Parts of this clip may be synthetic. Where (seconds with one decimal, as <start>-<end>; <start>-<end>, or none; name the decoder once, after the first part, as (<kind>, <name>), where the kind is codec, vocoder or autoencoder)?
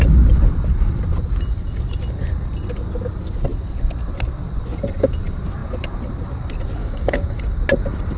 6.8-7.4 (codec, DAC)